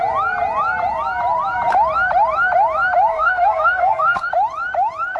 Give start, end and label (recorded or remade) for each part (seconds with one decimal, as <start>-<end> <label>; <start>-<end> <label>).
0.0-3.1 recorded; 3.1-4.3 remade; 4.3-5.2 recorded